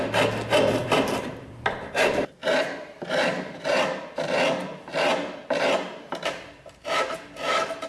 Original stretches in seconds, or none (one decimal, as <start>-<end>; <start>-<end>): 0.0-0.8; 4.0-4.6; 7.0-7.9